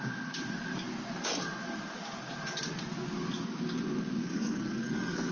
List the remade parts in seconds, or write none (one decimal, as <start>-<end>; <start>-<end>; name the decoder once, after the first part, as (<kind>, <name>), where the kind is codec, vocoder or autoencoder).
4.2-5.3 (codec, SNAC)